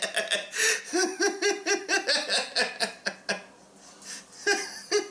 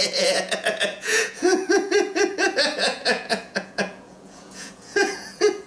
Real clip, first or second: first